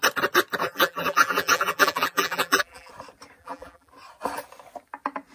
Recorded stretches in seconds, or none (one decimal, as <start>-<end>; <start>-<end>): 0.0-0.6; 2.9-3.4; 3.9-5.3

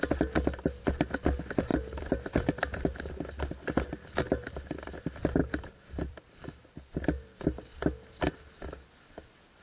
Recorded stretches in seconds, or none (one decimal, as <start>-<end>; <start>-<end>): 0.0-1.7; 3.0-5.4; 7.4-9.6

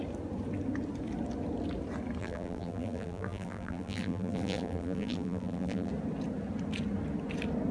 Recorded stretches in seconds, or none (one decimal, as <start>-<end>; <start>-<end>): 0.0-2.2; 5.9-7.7

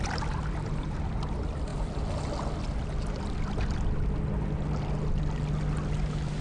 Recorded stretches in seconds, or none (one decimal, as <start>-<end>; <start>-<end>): 0.0-6.4

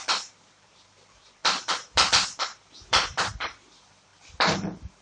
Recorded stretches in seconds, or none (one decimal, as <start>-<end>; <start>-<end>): none

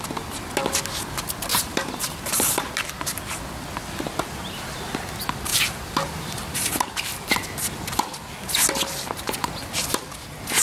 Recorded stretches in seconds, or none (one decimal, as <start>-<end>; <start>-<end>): 0.0-1.5; 2.6-5.5; 7.0-10.6

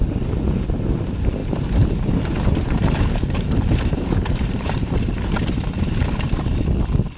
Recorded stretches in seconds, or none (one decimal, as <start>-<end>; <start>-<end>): 0.0-1.4; 5.0-7.2